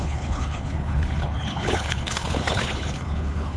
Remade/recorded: remade